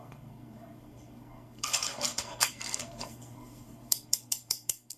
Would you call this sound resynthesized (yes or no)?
yes